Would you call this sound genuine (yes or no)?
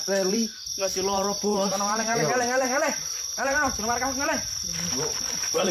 no